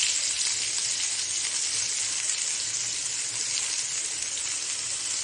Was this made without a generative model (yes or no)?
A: yes